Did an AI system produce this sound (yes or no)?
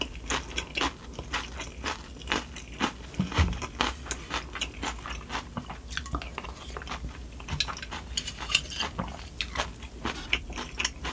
no